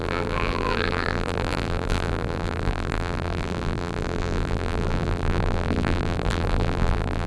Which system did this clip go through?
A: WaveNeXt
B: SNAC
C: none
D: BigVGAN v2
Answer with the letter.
D